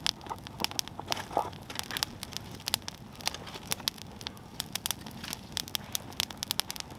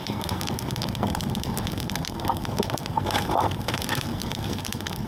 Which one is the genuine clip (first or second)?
first